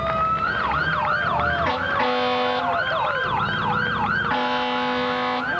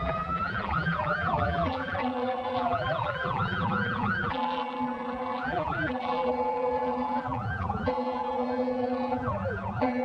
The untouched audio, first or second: first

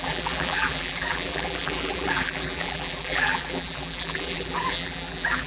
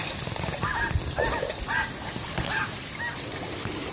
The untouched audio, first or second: second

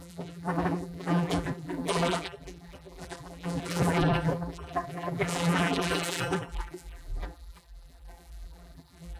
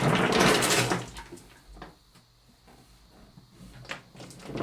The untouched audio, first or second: second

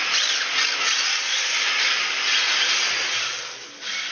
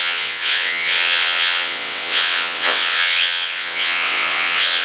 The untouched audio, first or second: first